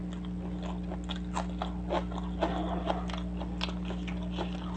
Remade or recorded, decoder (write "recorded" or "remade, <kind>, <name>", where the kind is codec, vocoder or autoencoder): recorded